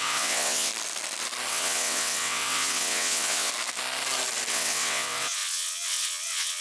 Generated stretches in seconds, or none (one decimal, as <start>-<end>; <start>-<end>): 0.0-0.7; 1.5-3.5; 4.5-6.6